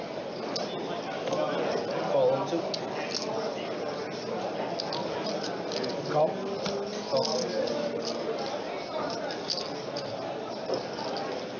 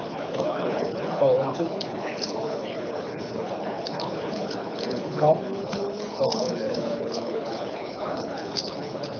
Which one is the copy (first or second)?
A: second